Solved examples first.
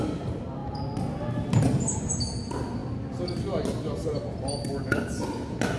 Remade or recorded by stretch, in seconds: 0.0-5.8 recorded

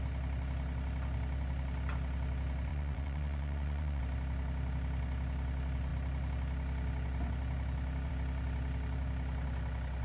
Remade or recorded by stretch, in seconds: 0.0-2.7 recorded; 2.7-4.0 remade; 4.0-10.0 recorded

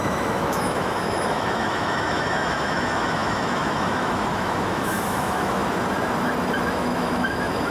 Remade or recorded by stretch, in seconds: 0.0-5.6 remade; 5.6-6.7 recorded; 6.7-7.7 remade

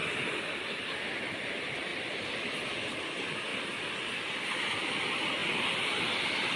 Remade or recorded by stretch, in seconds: 0.0-1.1 remade; 1.1-1.9 recorded; 1.9-2.9 remade; 2.9-5.4 recorded; 5.4-6.0 remade; 6.0-6.6 recorded

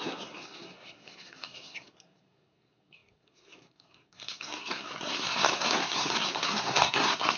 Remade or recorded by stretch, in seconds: 0.0-7.4 remade

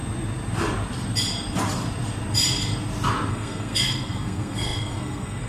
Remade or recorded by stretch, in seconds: 0.0-3.3 recorded; 3.3-5.5 remade

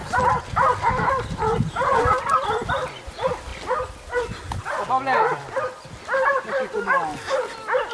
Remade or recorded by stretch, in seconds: 0.0-7.9 recorded

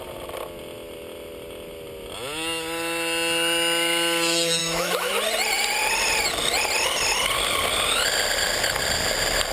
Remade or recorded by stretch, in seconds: 0.0-4.6 recorded; 4.6-5.1 remade; 5.1-9.5 recorded